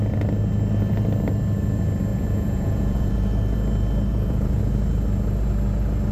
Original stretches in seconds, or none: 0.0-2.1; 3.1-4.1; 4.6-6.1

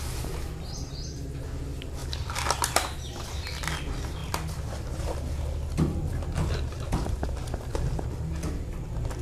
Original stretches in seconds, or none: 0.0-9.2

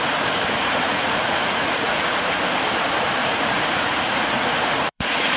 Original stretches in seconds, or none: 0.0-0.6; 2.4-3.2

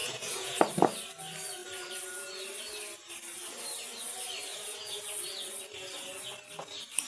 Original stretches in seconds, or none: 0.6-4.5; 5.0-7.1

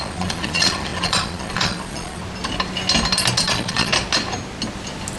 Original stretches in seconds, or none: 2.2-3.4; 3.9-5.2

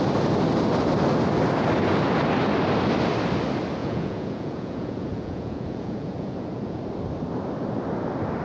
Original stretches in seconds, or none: 0.0-3.8; 6.8-8.4